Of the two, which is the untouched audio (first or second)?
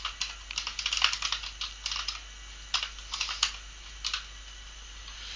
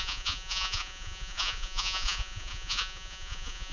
first